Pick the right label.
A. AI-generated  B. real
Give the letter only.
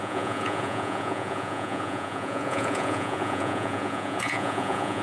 A